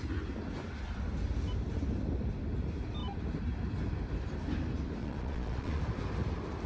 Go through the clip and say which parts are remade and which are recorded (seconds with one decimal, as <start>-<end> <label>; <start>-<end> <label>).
0.0-5.0 recorded; 5.0-5.8 remade; 5.8-6.7 recorded